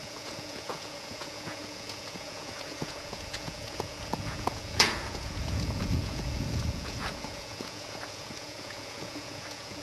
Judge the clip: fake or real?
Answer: fake